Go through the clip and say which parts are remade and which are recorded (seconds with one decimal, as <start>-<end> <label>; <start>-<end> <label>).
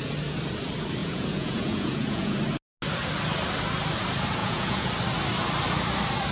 0.0-1.0 recorded; 1.0-2.4 remade; 2.4-4.4 recorded; 4.4-4.9 remade; 4.9-6.3 recorded